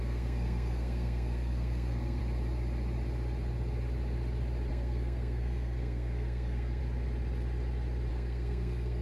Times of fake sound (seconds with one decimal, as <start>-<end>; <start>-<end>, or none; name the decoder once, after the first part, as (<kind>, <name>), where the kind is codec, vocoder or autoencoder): 0.0-2.2 (codec, SNAC); 4.7-6.8; 8.1-9.0